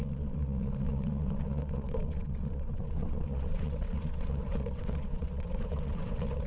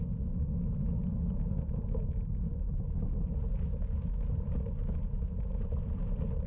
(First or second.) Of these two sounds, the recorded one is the second